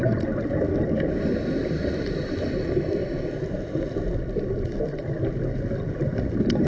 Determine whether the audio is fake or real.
fake